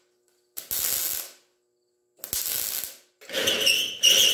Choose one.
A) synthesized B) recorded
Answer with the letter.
B